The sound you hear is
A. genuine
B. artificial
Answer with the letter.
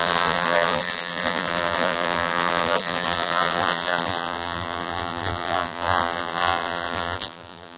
B